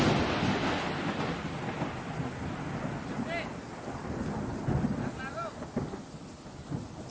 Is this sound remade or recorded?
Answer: recorded